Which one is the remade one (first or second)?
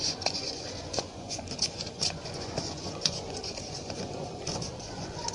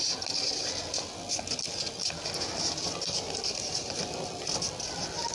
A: first